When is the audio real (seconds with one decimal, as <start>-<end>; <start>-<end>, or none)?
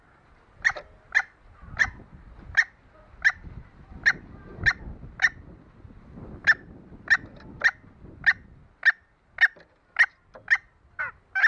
0.0-11.5